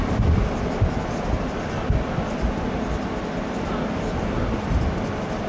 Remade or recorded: recorded